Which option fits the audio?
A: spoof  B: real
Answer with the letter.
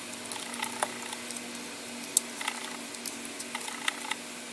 B